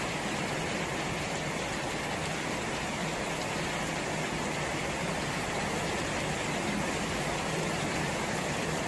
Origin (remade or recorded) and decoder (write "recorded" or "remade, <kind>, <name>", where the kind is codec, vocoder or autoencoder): recorded